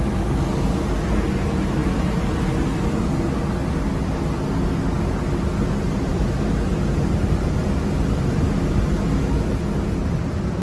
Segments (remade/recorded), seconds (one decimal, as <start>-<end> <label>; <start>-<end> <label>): 0.0-10.6 recorded